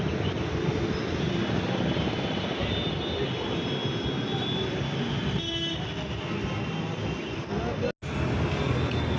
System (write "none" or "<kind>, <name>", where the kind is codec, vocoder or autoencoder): none